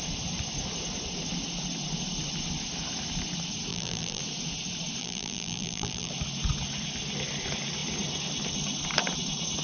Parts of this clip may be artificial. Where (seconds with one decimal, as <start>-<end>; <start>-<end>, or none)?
3.7-4.2; 5.0-6.1